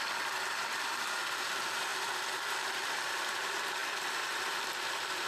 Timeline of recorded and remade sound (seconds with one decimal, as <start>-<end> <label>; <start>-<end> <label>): 0.0-1.9 remade; 1.9-2.6 recorded; 2.6-5.3 remade